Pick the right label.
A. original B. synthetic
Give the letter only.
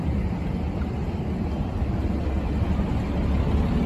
A